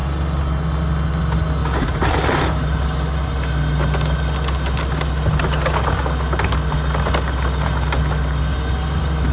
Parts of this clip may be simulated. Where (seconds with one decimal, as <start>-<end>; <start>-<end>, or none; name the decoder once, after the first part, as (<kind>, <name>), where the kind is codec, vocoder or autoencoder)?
none